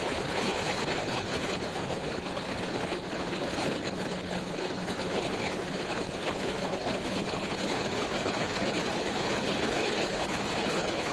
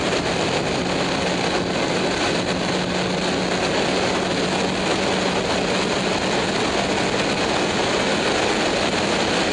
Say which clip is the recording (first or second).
second